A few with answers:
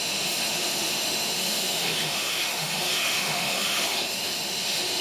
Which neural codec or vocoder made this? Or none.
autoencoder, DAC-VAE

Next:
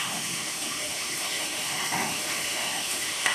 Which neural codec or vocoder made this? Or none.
autoencoder, DAC-VAE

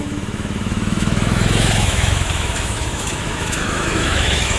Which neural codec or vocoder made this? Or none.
autoencoder, DAC-VAE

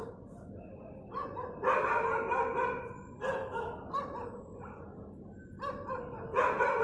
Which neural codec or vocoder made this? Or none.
none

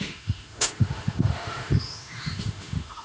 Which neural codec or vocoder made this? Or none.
autoencoder, DAC-VAE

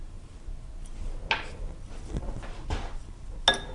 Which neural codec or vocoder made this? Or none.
none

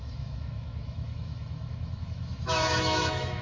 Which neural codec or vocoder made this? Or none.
autoencoder, DAC-VAE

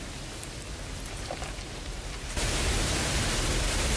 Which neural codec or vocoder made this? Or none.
none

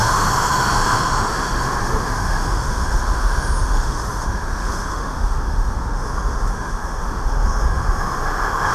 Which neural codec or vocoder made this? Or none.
autoencoder, DAC-VAE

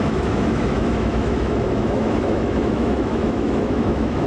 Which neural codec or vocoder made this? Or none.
autoencoder, DAC-VAE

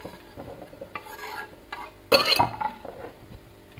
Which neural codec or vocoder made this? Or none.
none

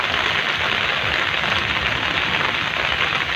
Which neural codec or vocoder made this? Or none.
none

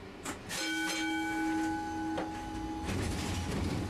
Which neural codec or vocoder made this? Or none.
none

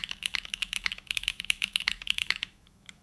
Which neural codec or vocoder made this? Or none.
autoencoder, DAC-VAE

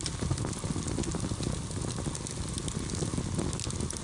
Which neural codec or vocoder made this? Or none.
none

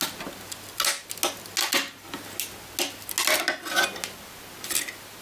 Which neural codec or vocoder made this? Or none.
none